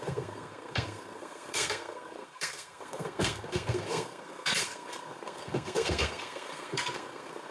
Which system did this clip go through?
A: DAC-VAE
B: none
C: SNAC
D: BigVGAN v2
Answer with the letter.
C